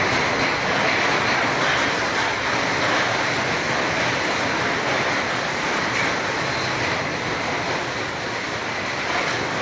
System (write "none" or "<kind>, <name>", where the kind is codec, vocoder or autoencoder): none